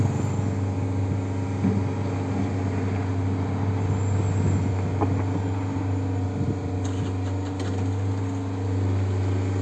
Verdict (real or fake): real